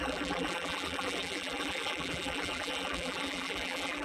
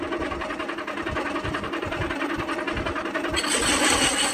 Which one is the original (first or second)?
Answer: second